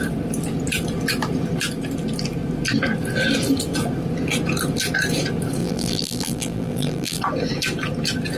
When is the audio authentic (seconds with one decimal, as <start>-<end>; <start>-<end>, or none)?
0.0-5.6; 7.2-8.4